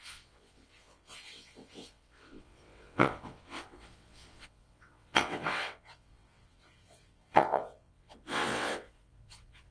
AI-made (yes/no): yes